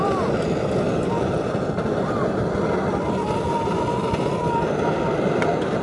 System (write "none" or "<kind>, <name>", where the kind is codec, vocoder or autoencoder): none